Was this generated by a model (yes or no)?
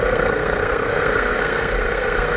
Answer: yes